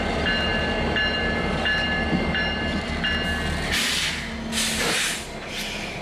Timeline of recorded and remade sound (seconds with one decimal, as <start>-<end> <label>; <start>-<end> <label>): 0.0-6.0 recorded